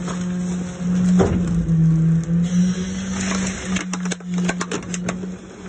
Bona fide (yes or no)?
yes